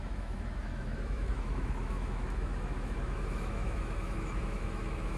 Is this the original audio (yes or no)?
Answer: no